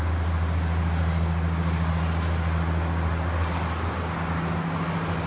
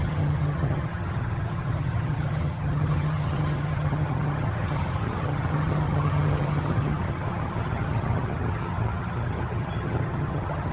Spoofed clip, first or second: second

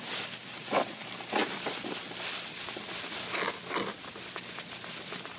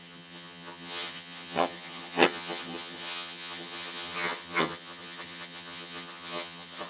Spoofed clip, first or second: second